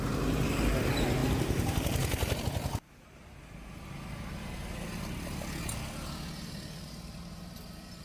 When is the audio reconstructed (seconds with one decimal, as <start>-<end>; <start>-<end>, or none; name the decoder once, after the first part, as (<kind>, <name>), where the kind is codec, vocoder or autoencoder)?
1.2-2.4 (vocoder, BigVGAN v2)